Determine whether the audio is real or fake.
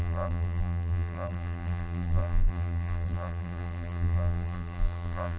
fake